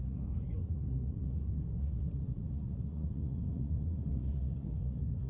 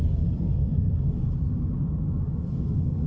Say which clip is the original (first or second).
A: second